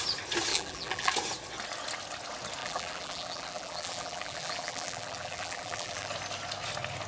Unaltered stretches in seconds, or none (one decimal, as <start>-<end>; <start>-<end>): 0.0-0.5; 1.1-2.6; 6.1-7.1